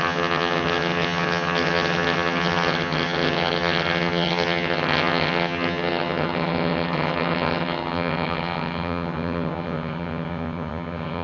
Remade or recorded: remade